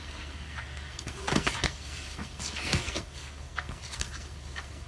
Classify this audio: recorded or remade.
remade